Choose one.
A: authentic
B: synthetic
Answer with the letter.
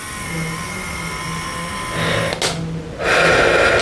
A